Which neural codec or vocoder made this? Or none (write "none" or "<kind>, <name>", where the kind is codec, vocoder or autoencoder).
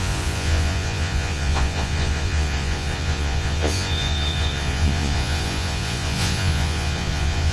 vocoder, Vocos